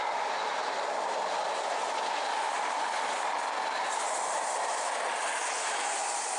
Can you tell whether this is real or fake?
real